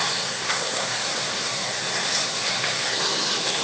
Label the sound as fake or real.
fake